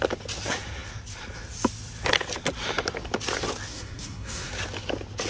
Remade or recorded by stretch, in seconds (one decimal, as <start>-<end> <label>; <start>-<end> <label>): 0.0-3.7 recorded; 3.7-4.5 remade; 4.5-5.3 recorded